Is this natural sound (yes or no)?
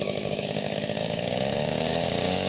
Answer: no